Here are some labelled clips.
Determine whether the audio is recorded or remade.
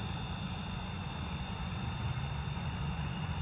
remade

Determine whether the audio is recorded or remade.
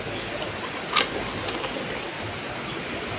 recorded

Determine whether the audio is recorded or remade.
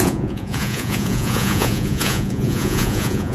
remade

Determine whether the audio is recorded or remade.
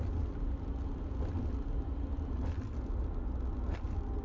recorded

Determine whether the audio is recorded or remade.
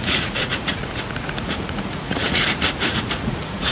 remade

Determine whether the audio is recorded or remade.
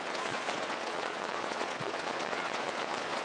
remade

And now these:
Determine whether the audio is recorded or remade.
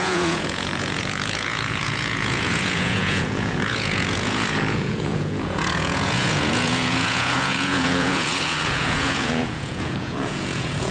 remade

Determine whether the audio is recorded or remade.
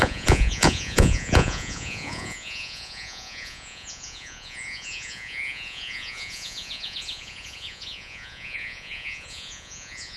remade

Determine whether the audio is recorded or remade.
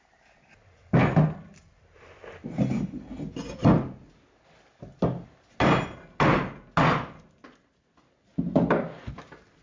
recorded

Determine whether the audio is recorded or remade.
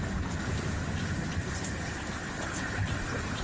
recorded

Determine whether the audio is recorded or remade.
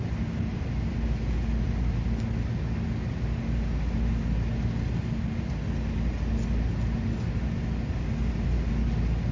recorded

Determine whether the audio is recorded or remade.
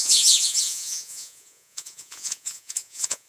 remade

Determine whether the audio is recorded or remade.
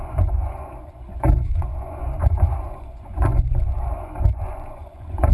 remade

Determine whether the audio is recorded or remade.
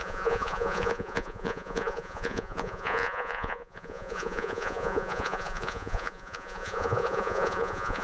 remade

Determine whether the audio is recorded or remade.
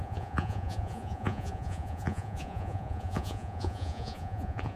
remade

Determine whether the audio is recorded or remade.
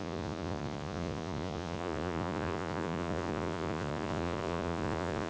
remade